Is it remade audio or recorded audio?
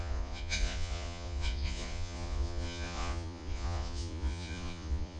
remade